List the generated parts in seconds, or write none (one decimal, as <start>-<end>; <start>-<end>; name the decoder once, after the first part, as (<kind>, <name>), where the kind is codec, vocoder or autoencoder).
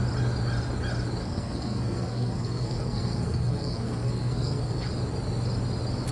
1.2-4.9 (codec, SNAC)